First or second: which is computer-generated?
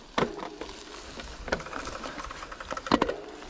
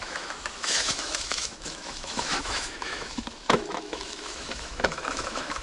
second